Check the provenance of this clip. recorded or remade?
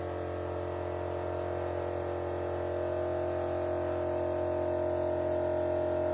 recorded